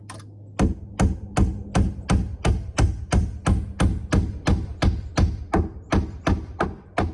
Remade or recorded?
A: recorded